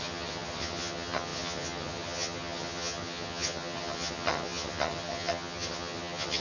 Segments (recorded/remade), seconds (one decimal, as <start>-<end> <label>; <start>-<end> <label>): 0.0-6.4 remade